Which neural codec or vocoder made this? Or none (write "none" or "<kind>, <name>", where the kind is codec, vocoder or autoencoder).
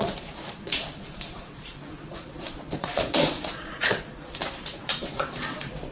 vocoder, Vocos